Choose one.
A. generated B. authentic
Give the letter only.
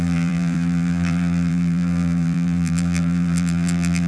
A